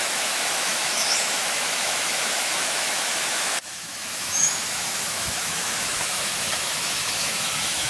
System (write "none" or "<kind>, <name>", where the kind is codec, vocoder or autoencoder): autoencoder, DAC-VAE